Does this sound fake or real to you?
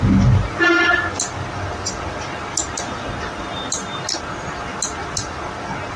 real